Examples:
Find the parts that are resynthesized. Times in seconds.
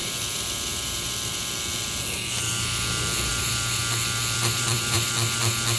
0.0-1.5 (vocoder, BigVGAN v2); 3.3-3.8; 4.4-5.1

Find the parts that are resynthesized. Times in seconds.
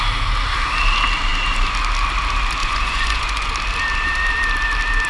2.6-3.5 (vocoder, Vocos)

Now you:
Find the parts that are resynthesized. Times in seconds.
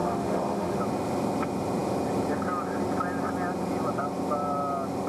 0.0-0.8 (autoencoder, DAC-VAE)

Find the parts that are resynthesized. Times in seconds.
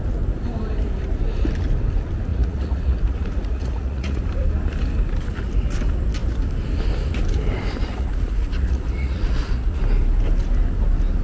2.3-4.2 (vocoder, Vocos); 7.9-9.8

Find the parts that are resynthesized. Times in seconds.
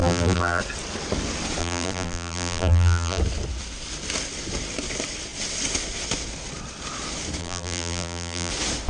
0.0-0.6 (vocoder, BigVGAN v2); 1.6-3.2; 7.4-8.5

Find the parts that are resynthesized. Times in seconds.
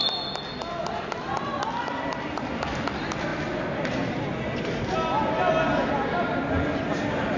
none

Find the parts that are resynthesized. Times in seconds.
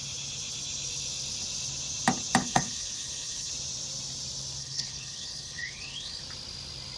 2.4-3.5 (codec, HILCodec); 4.6-6.2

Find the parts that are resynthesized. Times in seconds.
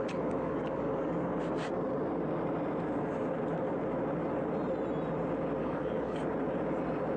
0.0-1.3 (codec, DAC); 5.6-6.2